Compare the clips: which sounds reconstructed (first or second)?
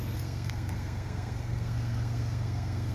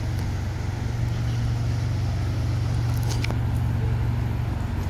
first